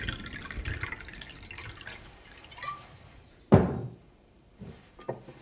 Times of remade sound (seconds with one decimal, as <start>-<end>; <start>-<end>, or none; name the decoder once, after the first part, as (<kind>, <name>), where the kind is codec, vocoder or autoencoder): 1.6-4.8 (vocoder, BigVGAN v2)